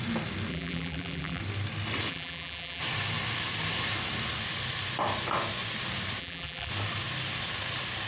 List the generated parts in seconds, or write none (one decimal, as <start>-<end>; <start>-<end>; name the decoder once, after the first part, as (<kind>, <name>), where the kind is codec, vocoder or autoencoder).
0.5-1.4 (vocoder, BigVGAN v2); 2.1-2.8; 6.2-6.7